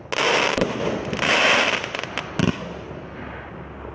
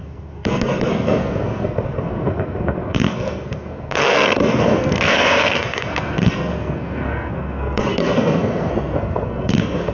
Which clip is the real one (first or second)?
first